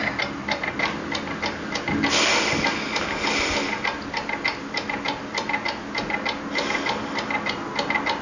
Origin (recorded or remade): recorded